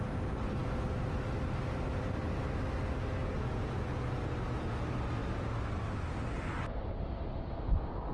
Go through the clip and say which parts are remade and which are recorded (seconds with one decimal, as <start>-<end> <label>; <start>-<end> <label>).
0.0-8.1 recorded